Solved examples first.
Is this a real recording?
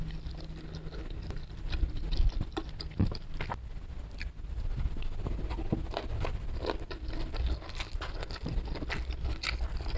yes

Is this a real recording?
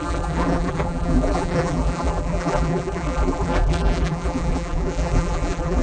no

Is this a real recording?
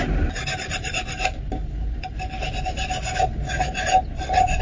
yes